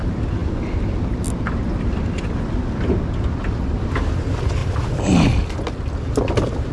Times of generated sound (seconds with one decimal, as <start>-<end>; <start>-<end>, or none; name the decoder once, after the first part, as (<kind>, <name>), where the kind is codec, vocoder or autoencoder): none